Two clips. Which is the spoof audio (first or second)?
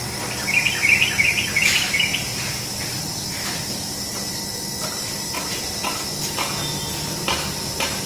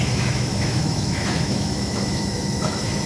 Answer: second